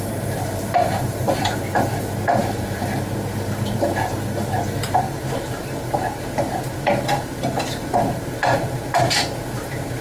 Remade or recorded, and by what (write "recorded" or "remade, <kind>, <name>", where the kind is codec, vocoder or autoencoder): remade, vocoder, BigVGAN v2